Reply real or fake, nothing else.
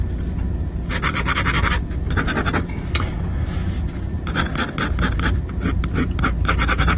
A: real